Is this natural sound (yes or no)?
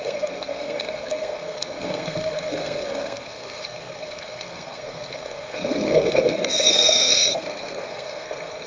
no